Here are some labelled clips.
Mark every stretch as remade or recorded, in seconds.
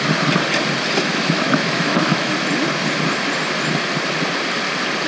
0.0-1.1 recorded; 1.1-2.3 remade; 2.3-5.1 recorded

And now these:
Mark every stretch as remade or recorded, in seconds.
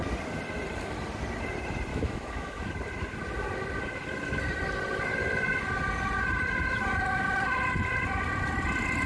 0.0-1.9 recorded; 1.9-2.7 remade; 2.7-9.1 recorded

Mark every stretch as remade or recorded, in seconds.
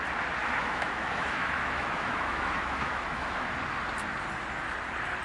0.0-0.4 recorded; 0.4-3.5 remade; 3.5-5.2 recorded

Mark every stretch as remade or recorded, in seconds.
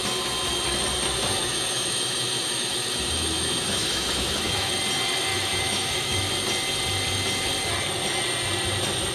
0.0-1.4 recorded; 1.4-4.7 remade; 4.7-5.3 recorded; 5.3-6.3 remade; 6.3-9.1 recorded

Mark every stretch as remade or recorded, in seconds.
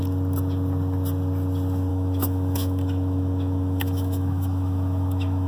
0.0-1.9 recorded; 1.9-5.5 remade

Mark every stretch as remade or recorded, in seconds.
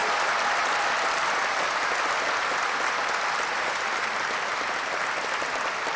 0.0-6.0 recorded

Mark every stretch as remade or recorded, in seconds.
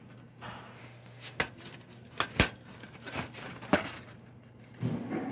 0.0-0.8 recorded; 0.8-1.4 remade; 1.4-5.3 recorded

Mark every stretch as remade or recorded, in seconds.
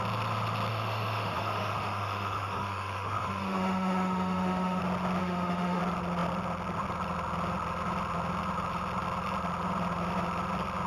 0.0-0.7 recorded; 0.7-4.8 remade; 4.8-5.2 recorded; 5.2-5.8 remade; 5.8-10.9 recorded